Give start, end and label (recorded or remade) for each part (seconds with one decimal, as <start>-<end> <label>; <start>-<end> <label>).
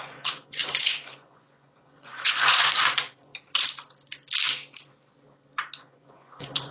0.0-3.3 remade; 3.3-5.8 recorded; 5.8-6.7 remade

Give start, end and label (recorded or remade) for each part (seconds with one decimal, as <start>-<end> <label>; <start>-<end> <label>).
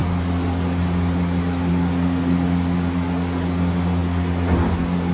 0.0-5.1 recorded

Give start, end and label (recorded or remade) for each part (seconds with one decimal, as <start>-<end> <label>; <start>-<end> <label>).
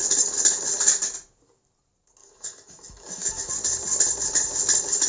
0.0-2.2 recorded; 2.2-3.5 remade; 3.5-5.1 recorded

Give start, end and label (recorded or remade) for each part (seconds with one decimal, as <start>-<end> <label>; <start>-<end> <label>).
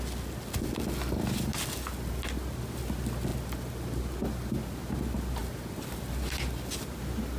0.0-7.4 recorded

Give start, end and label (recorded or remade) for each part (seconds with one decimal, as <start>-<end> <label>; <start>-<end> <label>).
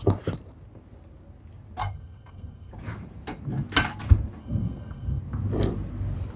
0.0-1.8 recorded; 1.8-2.7 remade; 2.7-4.4 recorded; 4.4-5.2 remade; 5.2-6.4 recorded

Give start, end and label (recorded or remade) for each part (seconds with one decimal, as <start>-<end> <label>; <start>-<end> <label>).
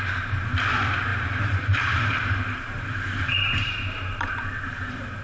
0.0-1.1 recorded; 1.1-4.2 remade; 4.2-5.2 recorded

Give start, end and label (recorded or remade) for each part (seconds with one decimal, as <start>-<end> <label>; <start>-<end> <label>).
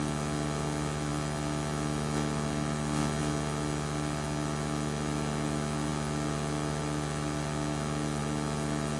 0.0-9.0 recorded